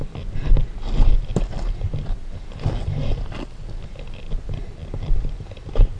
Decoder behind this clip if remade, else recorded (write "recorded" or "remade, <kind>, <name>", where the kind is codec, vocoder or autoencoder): recorded